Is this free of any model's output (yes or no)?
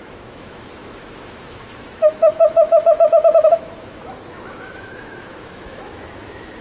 no